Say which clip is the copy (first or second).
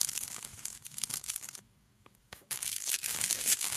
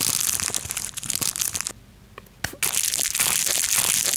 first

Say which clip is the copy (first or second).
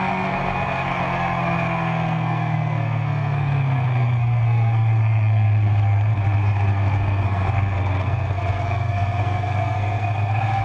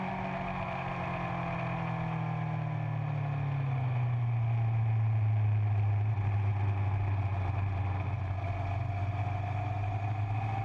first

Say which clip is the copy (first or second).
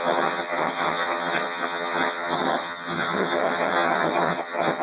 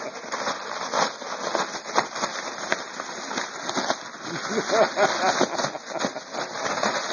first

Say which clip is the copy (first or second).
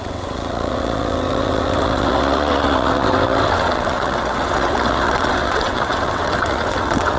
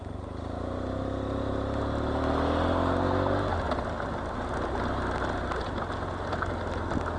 first